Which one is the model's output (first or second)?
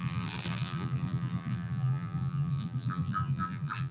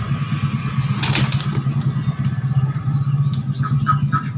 first